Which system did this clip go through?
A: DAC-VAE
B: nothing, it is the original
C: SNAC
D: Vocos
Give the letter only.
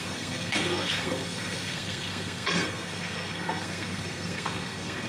C